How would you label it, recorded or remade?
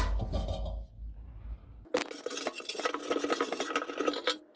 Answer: recorded